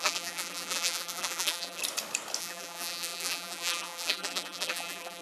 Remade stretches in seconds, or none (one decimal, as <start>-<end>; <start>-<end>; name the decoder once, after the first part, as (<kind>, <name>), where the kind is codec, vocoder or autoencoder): 0.0-1.8 (vocoder, BigVGAN v2); 2.4-5.2